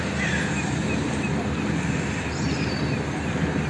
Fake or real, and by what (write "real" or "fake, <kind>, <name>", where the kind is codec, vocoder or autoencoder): real